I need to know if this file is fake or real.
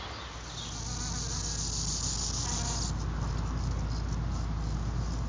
real